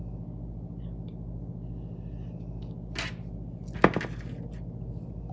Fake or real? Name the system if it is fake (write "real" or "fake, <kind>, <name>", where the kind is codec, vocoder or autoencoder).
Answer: real